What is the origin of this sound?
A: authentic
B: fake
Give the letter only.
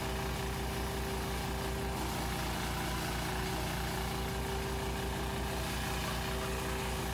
A